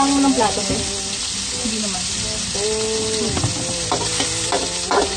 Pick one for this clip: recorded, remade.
recorded